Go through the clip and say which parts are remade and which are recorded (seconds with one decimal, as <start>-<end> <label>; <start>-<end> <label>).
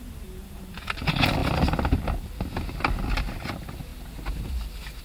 0.0-3.9 remade; 3.9-5.0 recorded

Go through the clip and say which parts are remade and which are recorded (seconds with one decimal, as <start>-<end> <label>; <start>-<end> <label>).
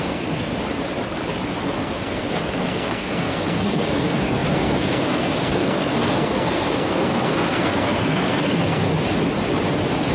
0.0-0.5 remade; 0.5-1.6 recorded; 1.6-8.9 remade; 8.9-10.1 recorded